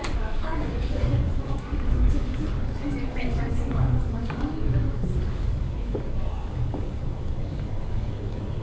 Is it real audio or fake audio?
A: fake